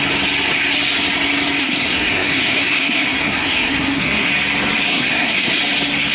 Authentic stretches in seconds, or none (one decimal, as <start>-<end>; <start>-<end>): 0.0-1.6; 4.3-4.9; 5.6-6.1